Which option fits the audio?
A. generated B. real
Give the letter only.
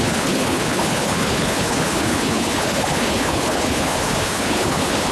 A